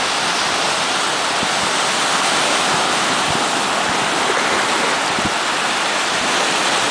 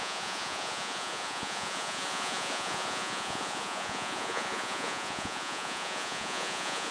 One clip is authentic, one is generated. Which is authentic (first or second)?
first